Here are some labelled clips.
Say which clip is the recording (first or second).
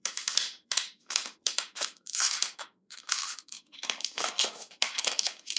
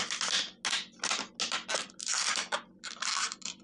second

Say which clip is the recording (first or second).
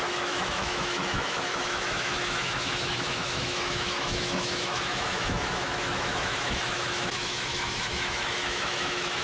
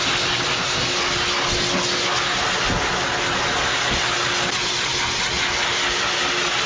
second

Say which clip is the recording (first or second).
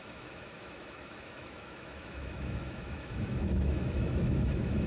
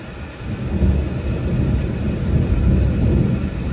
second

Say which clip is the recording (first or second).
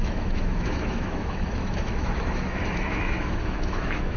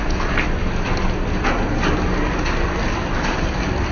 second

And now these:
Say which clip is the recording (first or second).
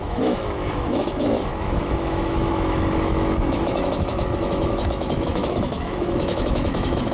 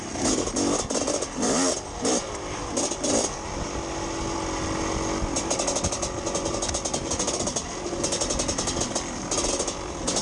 second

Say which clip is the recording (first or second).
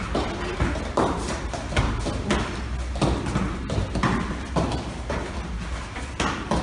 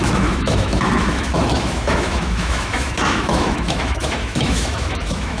first